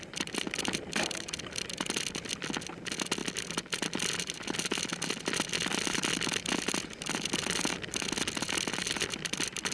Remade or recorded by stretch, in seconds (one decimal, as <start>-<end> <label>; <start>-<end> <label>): 0.0-9.7 recorded